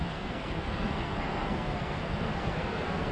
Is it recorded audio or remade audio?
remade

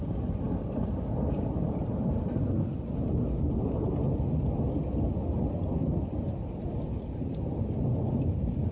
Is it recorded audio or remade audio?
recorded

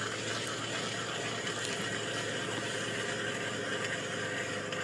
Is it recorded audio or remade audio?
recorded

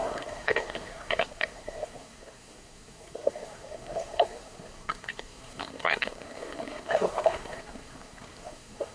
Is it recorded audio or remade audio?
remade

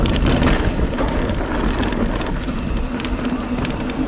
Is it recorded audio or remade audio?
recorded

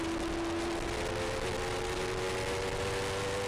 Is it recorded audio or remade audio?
recorded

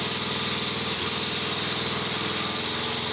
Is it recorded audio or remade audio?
remade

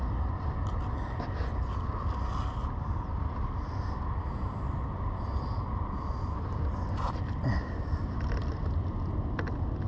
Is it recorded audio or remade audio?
recorded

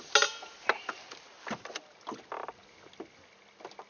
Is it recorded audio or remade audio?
recorded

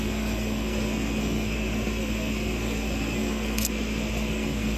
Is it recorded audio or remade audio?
remade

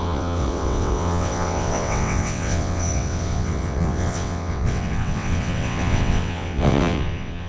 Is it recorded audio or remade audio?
remade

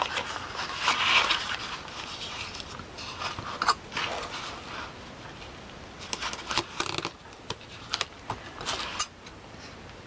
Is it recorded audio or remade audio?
recorded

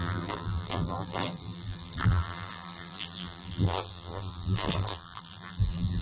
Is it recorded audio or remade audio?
remade